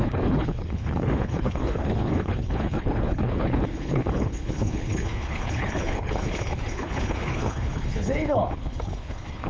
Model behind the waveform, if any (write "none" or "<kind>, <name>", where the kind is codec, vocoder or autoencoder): codec, HILCodec